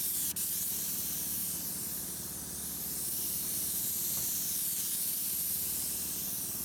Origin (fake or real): fake